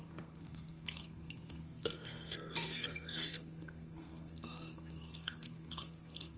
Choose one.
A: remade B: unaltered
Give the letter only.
A